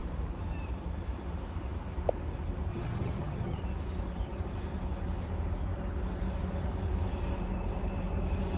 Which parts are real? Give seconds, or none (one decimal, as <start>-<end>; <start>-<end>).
0.0-2.7; 3.6-8.6